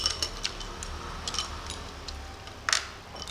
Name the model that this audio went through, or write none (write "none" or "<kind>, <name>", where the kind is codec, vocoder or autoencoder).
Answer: none